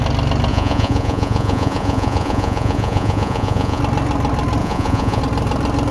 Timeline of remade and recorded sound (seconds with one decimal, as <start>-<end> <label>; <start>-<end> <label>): 0.0-0.5 recorded; 0.5-3.8 remade; 3.8-4.6 recorded; 4.6-5.2 remade; 5.2-5.9 recorded